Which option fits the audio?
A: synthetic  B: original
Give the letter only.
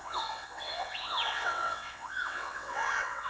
A